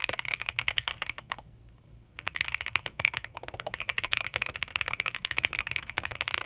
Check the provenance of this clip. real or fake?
fake